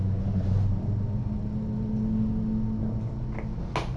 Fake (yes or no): no